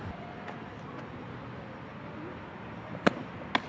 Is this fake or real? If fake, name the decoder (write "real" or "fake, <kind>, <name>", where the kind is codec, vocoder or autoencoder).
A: real